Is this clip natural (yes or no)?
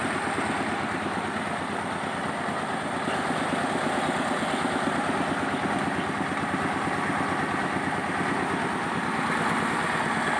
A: yes